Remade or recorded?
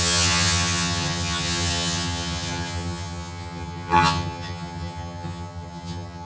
remade